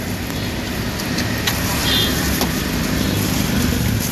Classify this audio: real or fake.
real